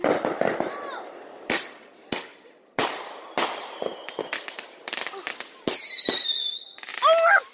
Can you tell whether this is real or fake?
real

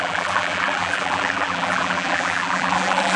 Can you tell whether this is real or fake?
fake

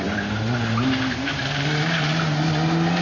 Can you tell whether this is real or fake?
fake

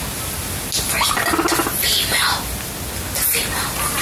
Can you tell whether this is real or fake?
real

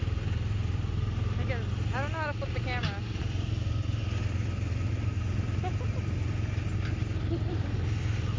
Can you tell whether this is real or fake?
real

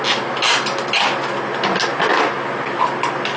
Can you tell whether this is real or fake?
real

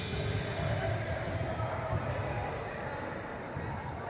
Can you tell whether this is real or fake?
fake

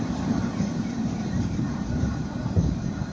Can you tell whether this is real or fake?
fake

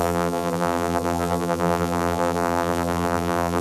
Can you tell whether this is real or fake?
fake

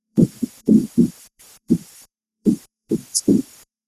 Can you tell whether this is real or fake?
fake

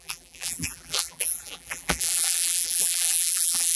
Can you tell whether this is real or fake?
fake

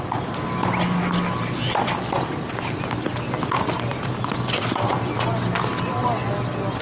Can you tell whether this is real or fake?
real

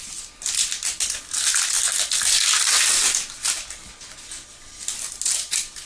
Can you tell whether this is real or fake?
real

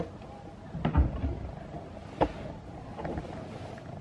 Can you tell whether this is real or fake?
real